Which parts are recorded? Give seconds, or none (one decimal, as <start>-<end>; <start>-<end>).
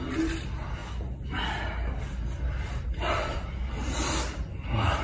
0.0-5.0